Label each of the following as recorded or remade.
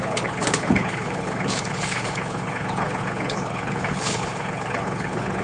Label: remade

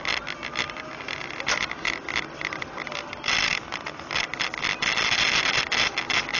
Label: recorded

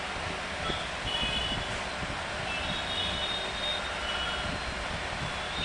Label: recorded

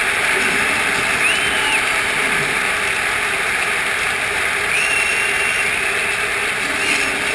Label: recorded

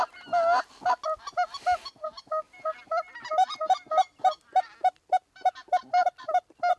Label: recorded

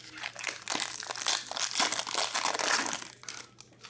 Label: recorded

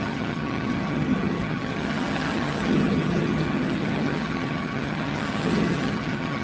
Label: remade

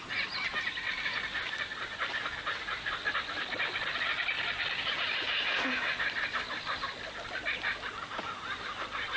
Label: recorded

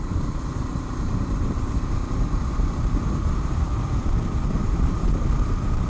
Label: remade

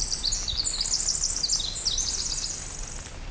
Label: recorded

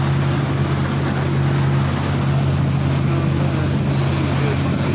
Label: recorded